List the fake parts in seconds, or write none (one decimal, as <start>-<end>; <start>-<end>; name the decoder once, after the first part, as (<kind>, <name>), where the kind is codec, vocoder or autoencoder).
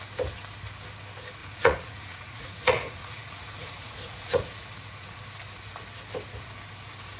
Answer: 1.4-5.2 (vocoder, Vocos)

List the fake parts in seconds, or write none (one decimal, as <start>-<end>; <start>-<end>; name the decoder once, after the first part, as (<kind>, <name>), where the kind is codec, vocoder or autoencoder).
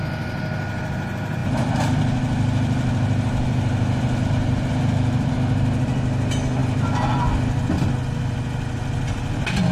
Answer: none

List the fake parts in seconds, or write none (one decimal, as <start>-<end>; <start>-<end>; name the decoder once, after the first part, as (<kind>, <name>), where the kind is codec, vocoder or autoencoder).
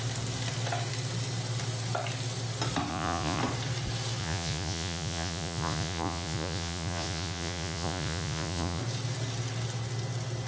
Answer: 2.9-3.4 (vocoder, Vocos); 4.2-8.8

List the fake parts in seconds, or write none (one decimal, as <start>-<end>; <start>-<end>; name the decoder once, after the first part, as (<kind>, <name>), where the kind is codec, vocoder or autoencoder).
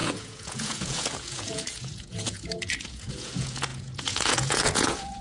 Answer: 0.0-5.2 (vocoder, Vocos)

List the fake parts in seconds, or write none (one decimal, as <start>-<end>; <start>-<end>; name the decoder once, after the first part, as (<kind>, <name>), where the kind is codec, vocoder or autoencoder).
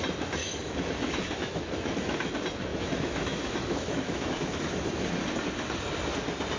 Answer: 0.4-2.3 (autoencoder, DAC-VAE); 2.7-4.7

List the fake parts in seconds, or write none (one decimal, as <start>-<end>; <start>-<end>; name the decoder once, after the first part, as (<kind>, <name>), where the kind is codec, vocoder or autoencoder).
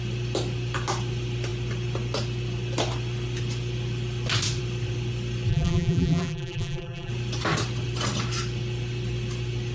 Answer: 5.5-7.1 (vocoder, BigVGAN v2)